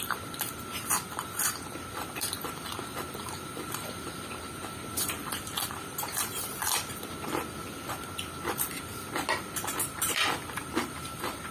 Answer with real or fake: fake